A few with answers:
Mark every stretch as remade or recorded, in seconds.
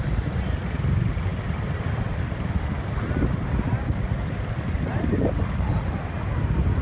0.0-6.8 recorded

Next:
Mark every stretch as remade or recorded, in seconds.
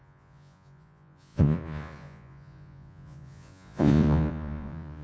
0.0-5.0 remade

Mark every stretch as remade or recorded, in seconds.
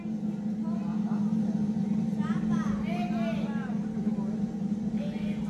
0.0-5.5 recorded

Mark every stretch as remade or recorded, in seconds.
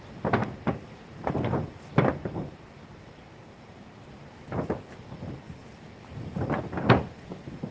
0.0-0.4 recorded; 0.4-1.7 remade; 1.7-2.1 recorded; 2.1-4.1 remade; 4.1-7.7 recorded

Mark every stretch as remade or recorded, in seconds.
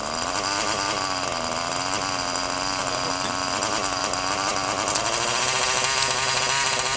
0.0-7.0 recorded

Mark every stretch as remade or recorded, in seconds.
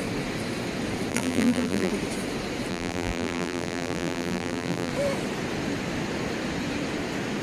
0.0-1.1 recorded; 1.1-1.9 remade; 1.9-2.7 recorded; 2.7-4.9 remade; 4.9-7.4 recorded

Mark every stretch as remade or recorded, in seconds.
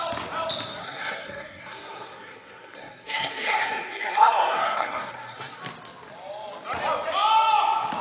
0.0-0.8 recorded; 0.8-5.6 remade; 5.6-8.0 recorded